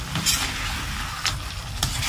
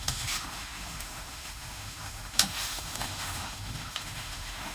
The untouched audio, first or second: first